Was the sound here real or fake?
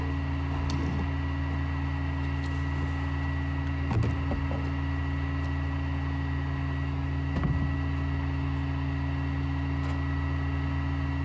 real